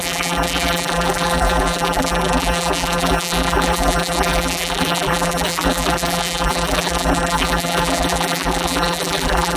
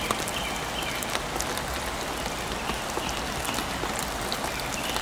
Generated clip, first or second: first